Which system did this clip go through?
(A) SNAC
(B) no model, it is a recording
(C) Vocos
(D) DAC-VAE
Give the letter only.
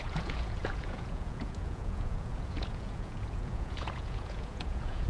C